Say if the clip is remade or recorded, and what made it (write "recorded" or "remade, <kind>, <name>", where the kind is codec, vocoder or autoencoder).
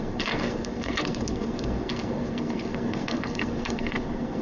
remade, codec, SNAC